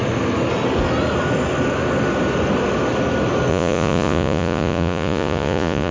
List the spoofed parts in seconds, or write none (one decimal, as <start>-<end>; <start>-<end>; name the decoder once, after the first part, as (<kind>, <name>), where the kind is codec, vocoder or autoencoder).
3.5-5.9 (vocoder, Vocos)